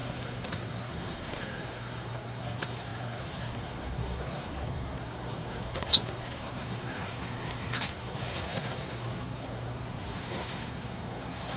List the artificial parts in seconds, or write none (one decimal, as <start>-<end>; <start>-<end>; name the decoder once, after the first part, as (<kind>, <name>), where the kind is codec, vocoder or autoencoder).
0.0-11.6 (codec, SNAC)